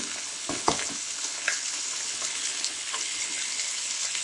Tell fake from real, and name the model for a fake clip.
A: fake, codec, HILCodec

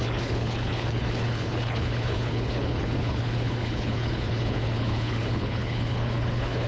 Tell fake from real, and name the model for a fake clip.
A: fake, codec, HILCodec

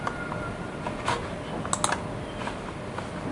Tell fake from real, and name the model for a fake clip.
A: real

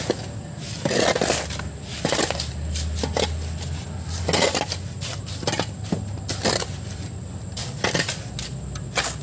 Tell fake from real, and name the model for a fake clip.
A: real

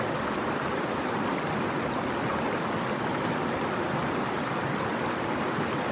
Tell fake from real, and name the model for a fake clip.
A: real